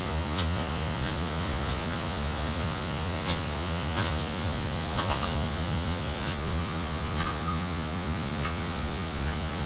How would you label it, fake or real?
fake